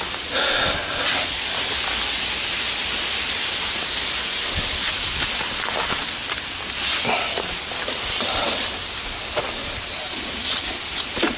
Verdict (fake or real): real